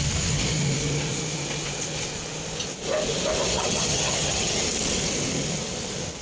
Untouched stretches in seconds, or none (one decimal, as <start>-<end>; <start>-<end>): 0.0-3.5; 4.6-6.2